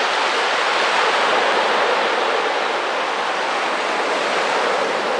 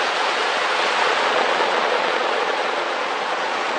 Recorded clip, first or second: first